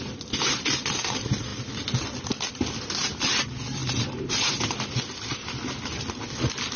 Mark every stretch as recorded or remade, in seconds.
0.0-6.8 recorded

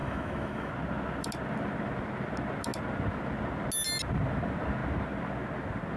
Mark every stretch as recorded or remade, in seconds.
0.0-0.7 remade; 0.7-6.0 recorded

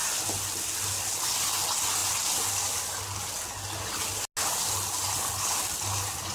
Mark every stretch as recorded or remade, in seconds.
0.0-6.3 recorded

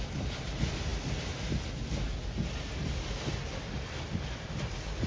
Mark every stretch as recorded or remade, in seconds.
0.0-5.1 recorded

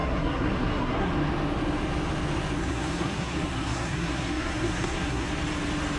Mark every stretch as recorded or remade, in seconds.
0.0-1.1 remade; 1.1-2.6 recorded; 2.6-5.3 remade; 5.3-6.0 recorded

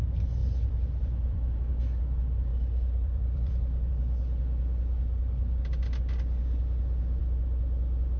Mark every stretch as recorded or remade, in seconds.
0.0-0.4 recorded; 0.4-1.6 remade; 1.6-2.5 recorded; 2.5-3.9 remade; 3.9-8.2 recorded